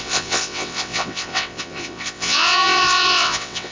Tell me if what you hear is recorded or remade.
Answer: remade